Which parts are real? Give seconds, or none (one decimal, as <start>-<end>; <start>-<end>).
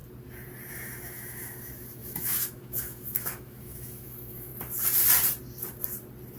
0.0-0.7; 4.5-6.4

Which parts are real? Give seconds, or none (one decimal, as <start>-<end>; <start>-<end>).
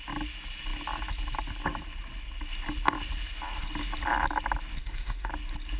0.0-4.8; 5.3-5.8